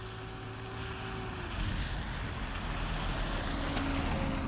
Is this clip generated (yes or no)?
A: no